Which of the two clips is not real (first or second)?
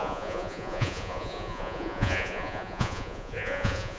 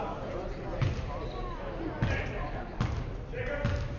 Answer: first